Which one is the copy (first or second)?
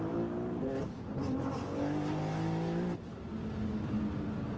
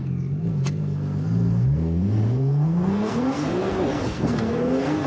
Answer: second